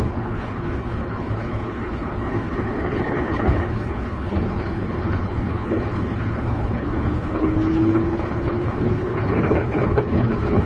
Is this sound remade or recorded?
remade